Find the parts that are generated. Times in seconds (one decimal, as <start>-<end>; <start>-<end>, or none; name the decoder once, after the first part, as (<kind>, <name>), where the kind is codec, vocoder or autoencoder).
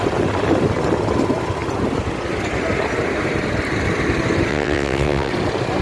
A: 4.5-5.3 (vocoder, WaveNeXt)